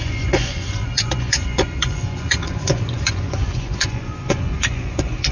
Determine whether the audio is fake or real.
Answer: fake